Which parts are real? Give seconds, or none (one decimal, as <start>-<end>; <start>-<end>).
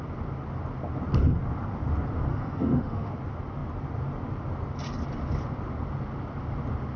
0.0-2.3; 3.1-7.0